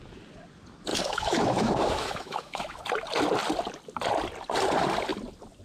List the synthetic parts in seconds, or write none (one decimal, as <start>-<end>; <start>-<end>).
0.9-2.8